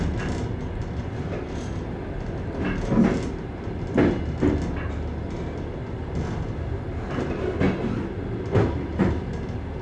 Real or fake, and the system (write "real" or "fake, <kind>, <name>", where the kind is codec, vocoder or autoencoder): real